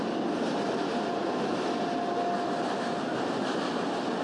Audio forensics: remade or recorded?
recorded